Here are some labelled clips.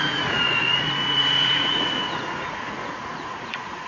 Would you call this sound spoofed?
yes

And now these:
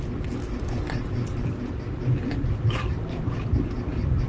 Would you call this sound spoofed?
no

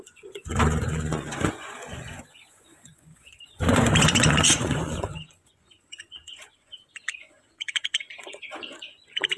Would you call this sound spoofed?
yes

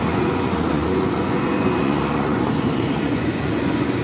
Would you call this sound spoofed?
yes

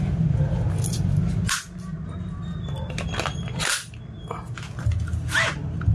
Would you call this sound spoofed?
no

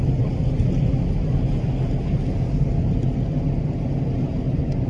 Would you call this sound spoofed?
no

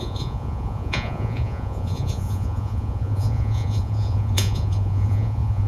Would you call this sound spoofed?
yes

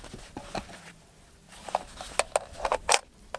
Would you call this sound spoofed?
no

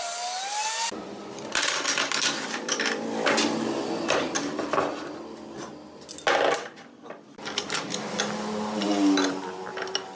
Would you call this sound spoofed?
no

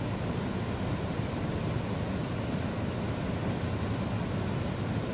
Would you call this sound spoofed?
no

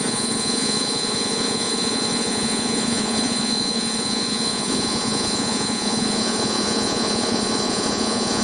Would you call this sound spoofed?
yes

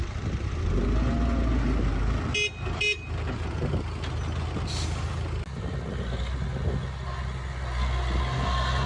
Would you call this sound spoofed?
no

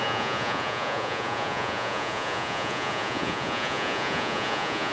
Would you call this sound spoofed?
yes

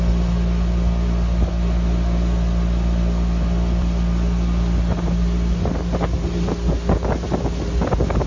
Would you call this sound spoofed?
no